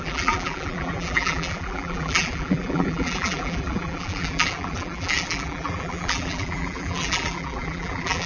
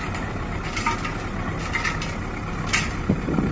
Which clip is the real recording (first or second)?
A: second